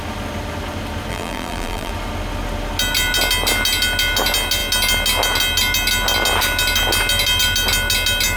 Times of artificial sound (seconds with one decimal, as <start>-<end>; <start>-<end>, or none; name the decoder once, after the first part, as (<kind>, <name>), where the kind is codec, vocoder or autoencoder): 1.1-1.9 (vocoder, BigVGAN v2)